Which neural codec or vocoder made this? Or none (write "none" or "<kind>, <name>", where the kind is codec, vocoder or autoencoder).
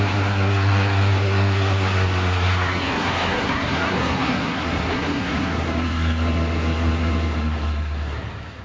codec, SNAC